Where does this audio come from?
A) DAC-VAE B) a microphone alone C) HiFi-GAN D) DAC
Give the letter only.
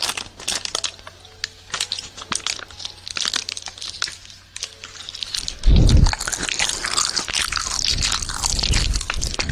B